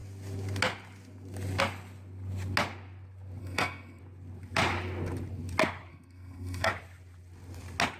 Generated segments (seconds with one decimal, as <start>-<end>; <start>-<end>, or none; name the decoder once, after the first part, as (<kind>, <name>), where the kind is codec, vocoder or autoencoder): 3.4-4.0 (codec, SNAC); 5.9-6.7